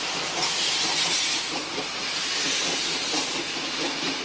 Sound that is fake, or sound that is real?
real